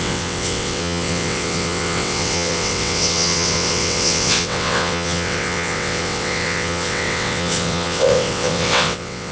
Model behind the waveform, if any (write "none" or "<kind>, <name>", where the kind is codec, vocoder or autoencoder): vocoder, WaveNeXt